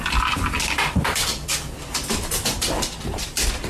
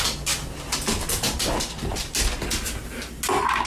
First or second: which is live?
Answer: second